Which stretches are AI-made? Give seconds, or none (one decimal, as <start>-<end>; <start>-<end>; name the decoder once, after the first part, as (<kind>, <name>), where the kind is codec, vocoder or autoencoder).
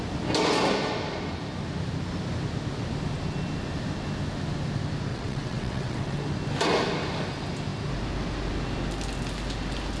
5.1-6.2 (vocoder, WaveNeXt)